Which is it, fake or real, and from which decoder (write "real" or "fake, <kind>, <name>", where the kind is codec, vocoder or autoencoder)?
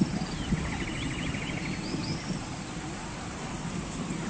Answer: real